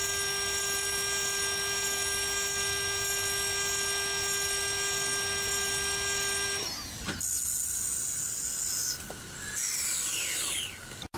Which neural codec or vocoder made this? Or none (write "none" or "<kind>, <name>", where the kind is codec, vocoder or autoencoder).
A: none